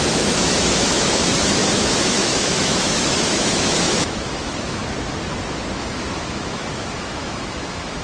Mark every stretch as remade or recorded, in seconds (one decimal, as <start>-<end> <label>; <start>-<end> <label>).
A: 0.0-4.8 remade; 4.8-5.8 recorded; 5.8-8.0 remade